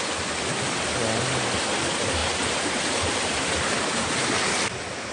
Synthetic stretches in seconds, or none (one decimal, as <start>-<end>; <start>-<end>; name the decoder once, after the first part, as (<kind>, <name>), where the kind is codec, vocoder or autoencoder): 2.2-4.5 (vocoder, BigVGAN v2)